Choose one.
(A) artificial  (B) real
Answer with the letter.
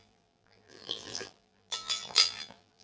A